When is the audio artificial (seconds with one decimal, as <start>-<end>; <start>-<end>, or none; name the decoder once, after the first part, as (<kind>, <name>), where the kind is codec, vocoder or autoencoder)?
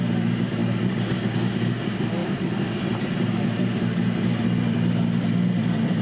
none